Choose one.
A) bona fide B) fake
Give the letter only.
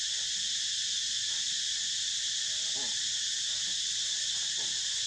A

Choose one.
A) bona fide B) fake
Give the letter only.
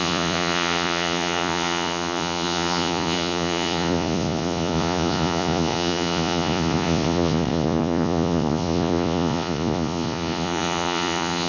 B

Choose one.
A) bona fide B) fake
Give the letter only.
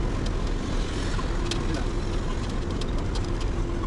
A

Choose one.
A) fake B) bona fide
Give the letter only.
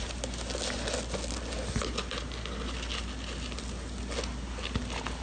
B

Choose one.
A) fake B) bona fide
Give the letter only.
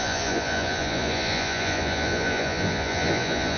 A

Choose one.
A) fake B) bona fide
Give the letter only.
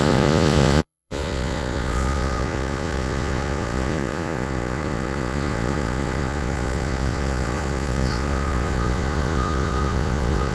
A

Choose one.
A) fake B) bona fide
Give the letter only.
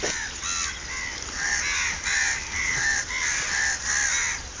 B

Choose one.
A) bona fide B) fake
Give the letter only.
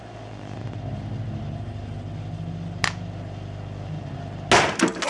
A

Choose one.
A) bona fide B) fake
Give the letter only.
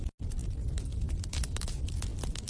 A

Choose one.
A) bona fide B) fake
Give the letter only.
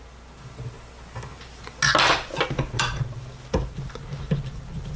A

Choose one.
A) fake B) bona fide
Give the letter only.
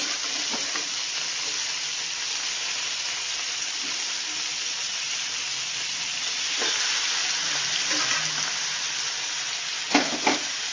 B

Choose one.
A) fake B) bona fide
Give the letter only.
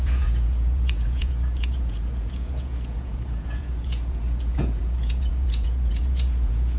A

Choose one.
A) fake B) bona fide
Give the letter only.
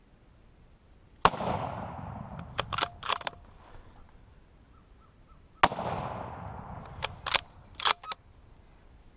B